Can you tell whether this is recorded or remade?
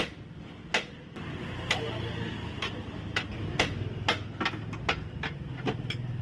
recorded